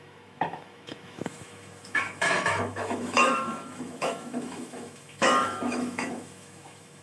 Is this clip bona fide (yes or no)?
no